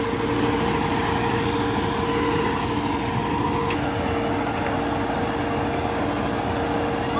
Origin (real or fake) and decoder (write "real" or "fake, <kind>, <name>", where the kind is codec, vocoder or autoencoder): real